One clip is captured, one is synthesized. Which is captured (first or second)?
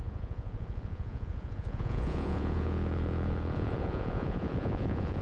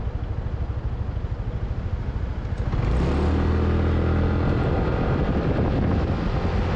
second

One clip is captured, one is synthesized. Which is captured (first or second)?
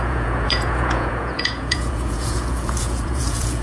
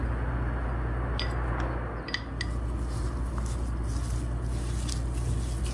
second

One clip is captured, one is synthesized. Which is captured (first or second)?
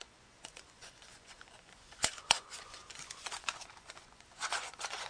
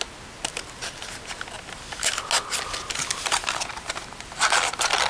second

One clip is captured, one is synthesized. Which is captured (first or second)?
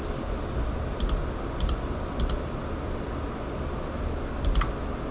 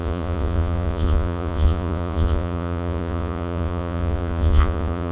first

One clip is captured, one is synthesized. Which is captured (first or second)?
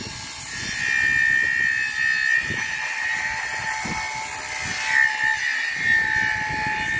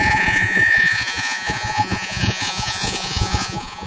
first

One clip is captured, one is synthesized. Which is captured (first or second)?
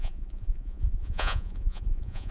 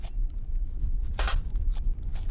second